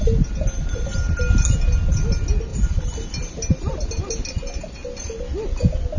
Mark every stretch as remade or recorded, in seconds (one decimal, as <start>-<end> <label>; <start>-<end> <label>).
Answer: 0.0-6.0 recorded